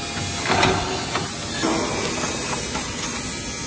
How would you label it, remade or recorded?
recorded